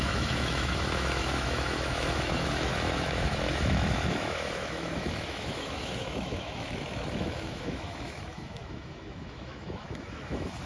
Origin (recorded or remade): remade